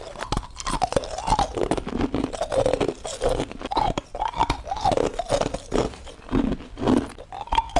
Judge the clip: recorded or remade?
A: recorded